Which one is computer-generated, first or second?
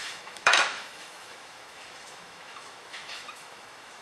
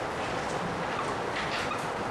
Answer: first